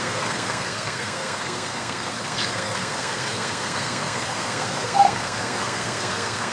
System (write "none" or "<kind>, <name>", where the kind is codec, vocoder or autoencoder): codec, SNAC